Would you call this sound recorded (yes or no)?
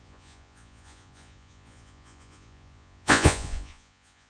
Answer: no